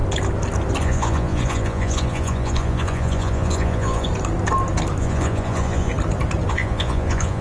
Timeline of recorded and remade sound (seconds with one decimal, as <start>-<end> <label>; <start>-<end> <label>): 0.0-0.8 recorded; 0.8-4.1 remade; 4.1-5.0 recorded; 5.0-5.9 remade; 5.9-6.5 recorded; 6.5-7.4 remade

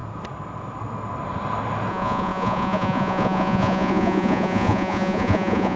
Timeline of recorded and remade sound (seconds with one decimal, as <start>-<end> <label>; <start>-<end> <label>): 0.0-1.9 recorded; 1.9-5.8 remade